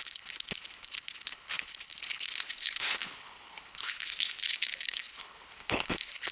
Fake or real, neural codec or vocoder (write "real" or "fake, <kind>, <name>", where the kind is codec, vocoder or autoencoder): fake, codec, HILCodec